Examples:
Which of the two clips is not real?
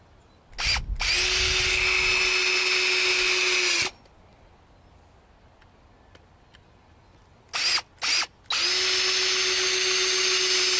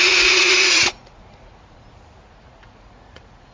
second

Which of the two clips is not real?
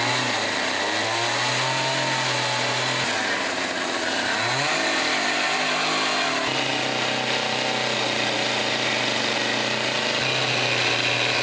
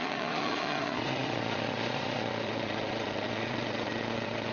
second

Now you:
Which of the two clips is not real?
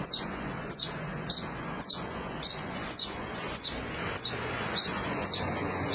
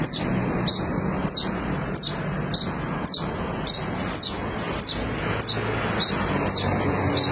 first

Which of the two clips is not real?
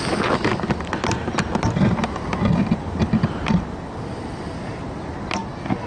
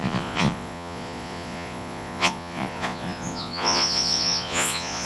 second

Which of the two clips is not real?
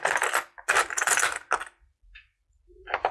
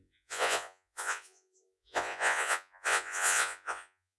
second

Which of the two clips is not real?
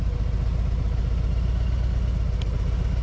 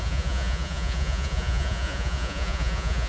second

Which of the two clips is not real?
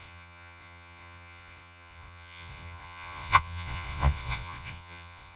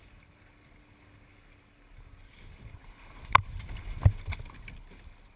first